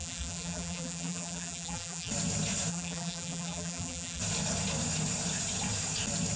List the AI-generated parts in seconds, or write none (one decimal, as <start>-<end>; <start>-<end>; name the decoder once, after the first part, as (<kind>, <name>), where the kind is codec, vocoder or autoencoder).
0.0-2.1 (vocoder, BigVGAN v2); 2.7-4.2